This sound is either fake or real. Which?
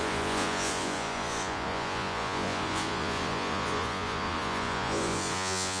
fake